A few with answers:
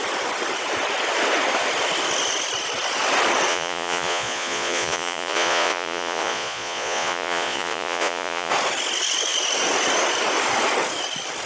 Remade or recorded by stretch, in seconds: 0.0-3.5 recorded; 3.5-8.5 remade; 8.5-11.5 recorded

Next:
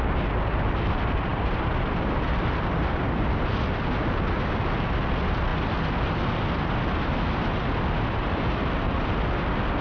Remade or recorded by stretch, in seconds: 0.0-9.8 recorded

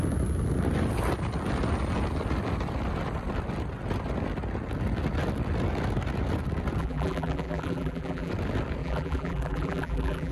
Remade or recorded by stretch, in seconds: 0.0-6.8 recorded; 6.8-8.3 remade; 8.3-8.8 recorded; 8.8-10.3 remade